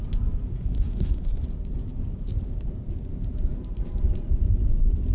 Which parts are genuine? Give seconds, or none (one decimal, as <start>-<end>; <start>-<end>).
0.0-0.5; 1.4-5.1